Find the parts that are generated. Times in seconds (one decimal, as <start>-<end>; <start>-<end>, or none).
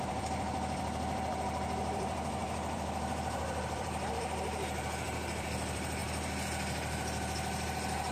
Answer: 0.0-6.0